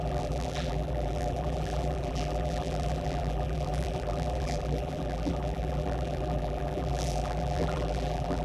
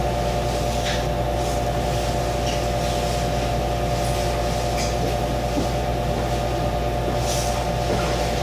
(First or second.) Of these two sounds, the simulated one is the first